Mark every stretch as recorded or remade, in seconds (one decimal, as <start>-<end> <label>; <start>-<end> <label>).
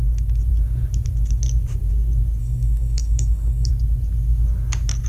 0.0-2.4 recorded; 2.4-3.7 remade; 3.7-5.1 recorded